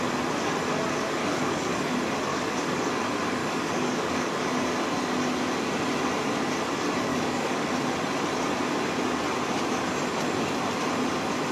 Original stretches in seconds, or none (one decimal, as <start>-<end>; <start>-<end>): 0.0-1.2; 1.9-2.3; 2.9-3.4; 4.5-7.1; 7.7-11.5